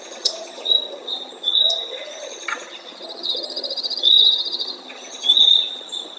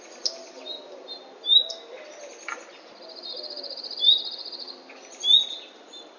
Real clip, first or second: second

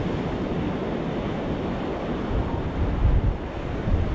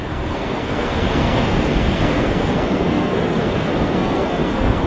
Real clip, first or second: first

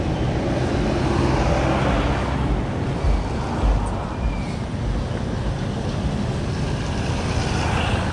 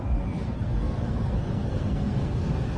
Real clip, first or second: first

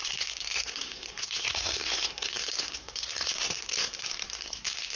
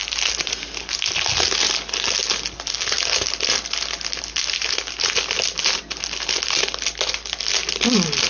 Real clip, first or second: second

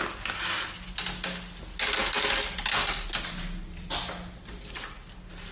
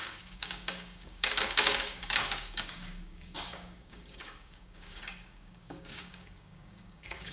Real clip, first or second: first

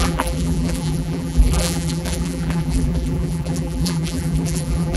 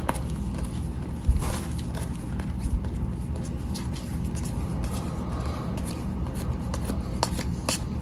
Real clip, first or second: second